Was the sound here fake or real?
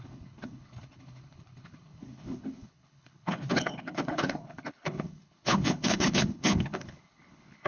fake